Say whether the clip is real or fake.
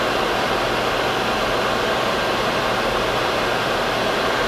real